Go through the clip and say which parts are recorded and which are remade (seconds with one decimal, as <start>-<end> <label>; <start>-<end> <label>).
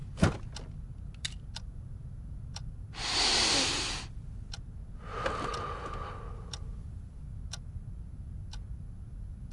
0.0-9.5 recorded